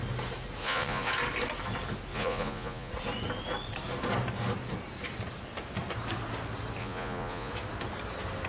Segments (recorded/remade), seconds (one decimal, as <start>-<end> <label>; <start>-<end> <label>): 0.0-0.6 recorded; 0.6-1.1 remade; 1.1-2.1 recorded; 2.1-2.9 remade; 2.9-6.8 recorded; 6.8-7.5 remade; 7.5-8.5 recorded